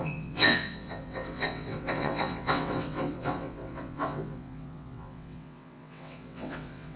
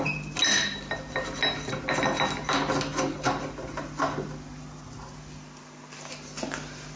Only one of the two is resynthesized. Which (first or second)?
first